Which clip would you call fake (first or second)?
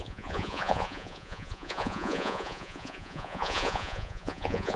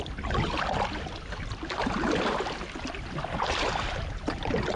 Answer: first